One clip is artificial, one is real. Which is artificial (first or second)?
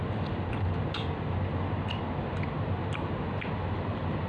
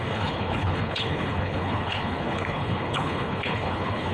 second